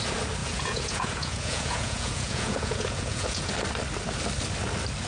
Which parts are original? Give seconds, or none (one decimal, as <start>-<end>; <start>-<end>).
0.0-0.4; 3.5-5.1